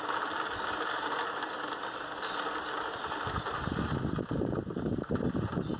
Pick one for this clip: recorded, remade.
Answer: recorded